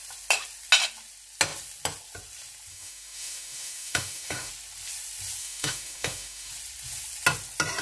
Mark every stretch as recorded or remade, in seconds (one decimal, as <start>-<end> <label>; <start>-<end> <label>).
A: 0.0-2.7 recorded; 2.7-4.5 remade; 4.5-5.4 recorded; 5.4-6.5 remade; 6.5-7.8 recorded